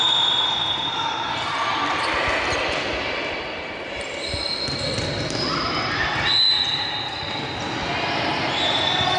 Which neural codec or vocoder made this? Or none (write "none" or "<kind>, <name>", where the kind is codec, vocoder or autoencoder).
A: none